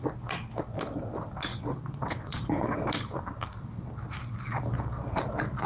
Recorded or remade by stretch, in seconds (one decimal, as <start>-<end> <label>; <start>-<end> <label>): 0.0-1.5 recorded; 1.5-2.9 remade; 2.9-5.7 recorded